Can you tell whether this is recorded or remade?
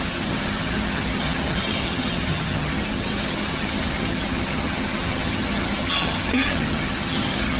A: remade